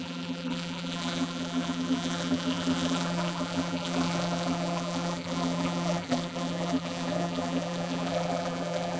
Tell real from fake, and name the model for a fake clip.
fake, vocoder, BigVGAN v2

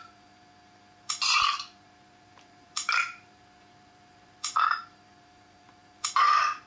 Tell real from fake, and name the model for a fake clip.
fake, vocoder, BigVGAN v2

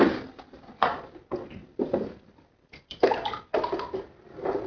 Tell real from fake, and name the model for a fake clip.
real